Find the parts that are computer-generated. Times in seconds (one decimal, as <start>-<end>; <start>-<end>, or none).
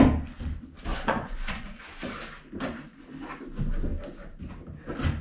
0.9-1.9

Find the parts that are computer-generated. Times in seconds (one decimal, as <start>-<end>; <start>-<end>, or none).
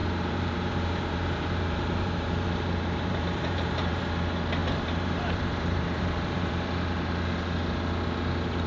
0.0-4.0; 4.6-6.5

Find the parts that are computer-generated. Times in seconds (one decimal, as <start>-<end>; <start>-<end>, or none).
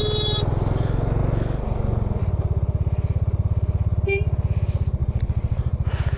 none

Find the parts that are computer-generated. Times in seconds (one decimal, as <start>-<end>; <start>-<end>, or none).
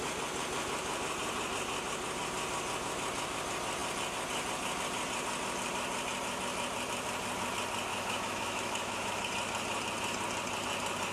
7.9-9.3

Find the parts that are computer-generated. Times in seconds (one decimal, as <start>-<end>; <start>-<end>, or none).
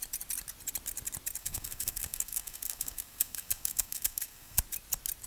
1.4-4.6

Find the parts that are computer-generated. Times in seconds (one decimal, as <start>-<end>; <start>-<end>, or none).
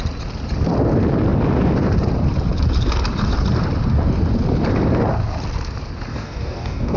6.1-7.0